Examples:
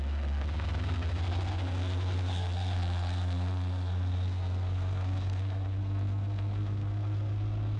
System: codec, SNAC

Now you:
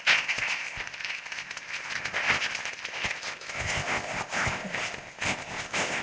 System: codec, ZipCodec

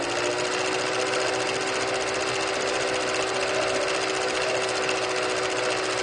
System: none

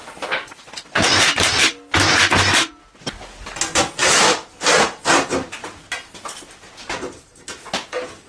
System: none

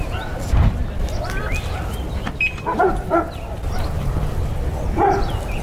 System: none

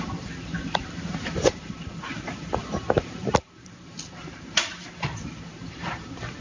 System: vocoder, BigVGAN v2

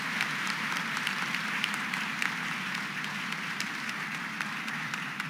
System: vocoder, BigVGAN v2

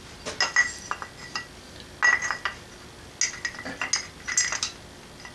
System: none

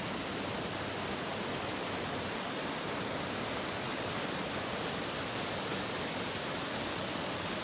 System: none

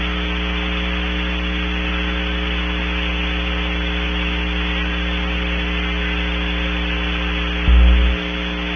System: none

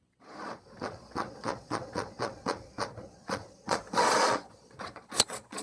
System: vocoder, Vocos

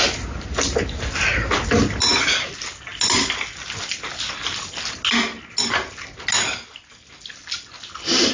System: none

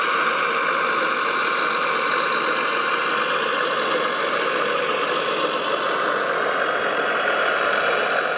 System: none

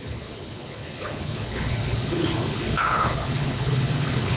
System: codec, HILCodec